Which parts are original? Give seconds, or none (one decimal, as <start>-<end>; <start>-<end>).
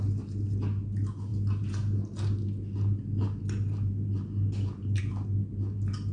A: 0.0-6.1